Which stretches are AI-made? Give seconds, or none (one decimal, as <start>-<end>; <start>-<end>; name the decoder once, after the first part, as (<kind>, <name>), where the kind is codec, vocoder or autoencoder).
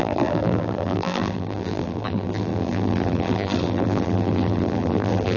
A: 0.0-5.4 (vocoder, BigVGAN v2)